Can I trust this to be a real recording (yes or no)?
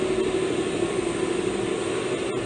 yes